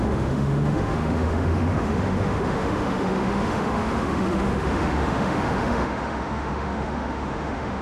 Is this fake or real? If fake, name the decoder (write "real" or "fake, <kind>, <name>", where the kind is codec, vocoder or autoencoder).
fake, autoencoder, DAC-VAE